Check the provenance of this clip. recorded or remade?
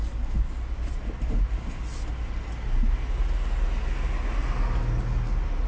recorded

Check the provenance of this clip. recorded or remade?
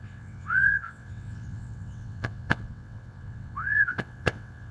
remade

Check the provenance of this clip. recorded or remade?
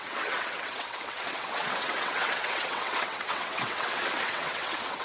remade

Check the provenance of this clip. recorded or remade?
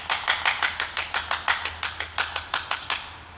recorded